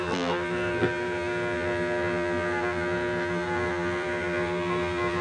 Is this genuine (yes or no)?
no